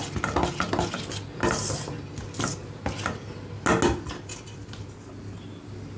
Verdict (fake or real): real